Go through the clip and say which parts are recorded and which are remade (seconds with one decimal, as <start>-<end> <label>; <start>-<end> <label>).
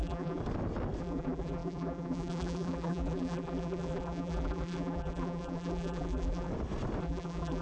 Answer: 0.0-0.4 remade; 0.4-1.0 recorded; 1.0-6.5 remade; 6.5-7.0 recorded; 7.0-7.6 remade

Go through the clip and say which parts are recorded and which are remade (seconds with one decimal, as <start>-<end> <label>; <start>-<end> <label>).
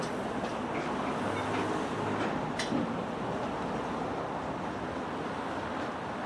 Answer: 0.0-6.3 recorded